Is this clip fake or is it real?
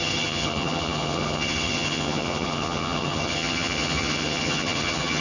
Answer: fake